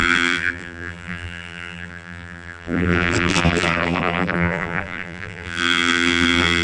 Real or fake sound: fake